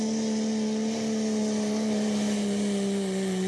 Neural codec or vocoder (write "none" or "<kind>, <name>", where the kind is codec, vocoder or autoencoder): none